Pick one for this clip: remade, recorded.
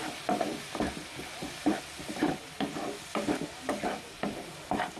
recorded